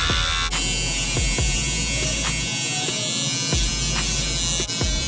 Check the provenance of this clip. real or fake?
real